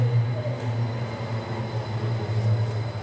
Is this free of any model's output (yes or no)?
yes